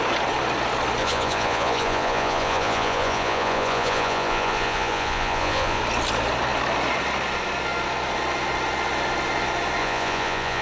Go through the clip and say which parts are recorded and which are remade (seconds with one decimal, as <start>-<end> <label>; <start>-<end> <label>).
0.0-1.0 recorded; 1.0-5.8 remade; 5.8-9.8 recorded; 9.8-10.6 remade